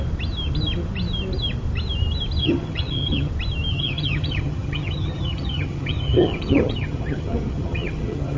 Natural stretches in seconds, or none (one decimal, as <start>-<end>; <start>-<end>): 0.0-2.4; 3.3-3.7